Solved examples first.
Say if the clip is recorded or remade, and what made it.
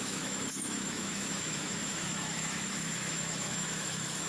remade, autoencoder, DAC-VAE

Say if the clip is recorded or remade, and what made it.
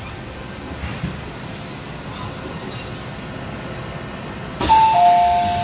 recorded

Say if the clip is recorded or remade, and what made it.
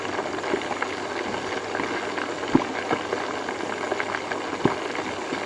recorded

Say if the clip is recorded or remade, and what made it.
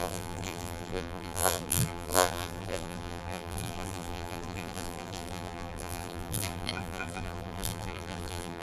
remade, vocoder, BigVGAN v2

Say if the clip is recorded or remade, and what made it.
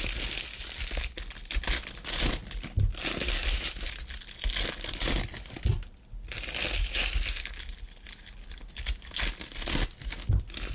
recorded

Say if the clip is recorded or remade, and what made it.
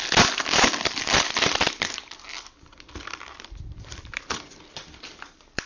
remade, vocoder, BigVGAN v2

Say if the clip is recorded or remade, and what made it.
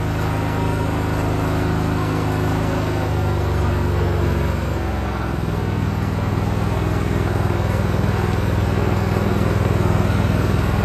remade, codec, SNAC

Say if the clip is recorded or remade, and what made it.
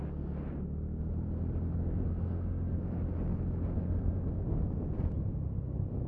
recorded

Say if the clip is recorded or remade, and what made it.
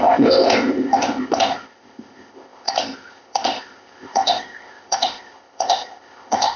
remade, codec, ZipCodec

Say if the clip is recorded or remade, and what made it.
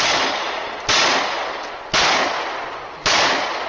recorded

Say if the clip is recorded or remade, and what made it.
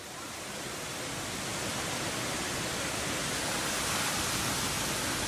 recorded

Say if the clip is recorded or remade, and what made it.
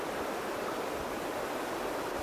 recorded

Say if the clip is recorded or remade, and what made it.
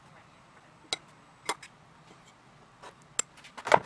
recorded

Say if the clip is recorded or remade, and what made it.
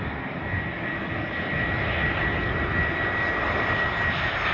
recorded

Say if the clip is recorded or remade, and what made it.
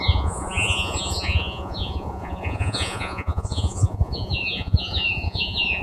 remade, vocoder, Vocos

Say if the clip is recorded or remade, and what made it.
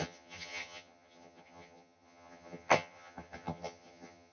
remade, vocoder, HiFi-GAN